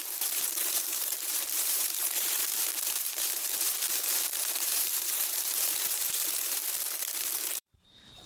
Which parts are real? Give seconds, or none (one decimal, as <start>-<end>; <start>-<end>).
6.6-7.6